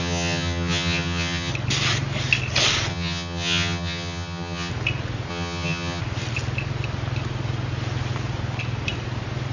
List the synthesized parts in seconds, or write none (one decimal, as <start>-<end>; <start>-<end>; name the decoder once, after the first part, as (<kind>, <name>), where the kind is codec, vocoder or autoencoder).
0.0-1.5 (vocoder, HiFi-GAN); 2.9-4.7; 5.3-6.0